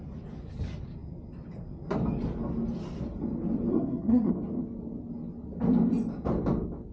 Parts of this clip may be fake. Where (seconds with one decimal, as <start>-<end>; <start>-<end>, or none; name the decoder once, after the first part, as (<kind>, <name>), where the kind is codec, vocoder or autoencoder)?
3.7-4.3 (codec, SNAC)